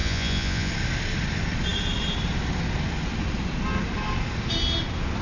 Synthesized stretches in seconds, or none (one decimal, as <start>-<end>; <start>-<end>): 0.0-0.7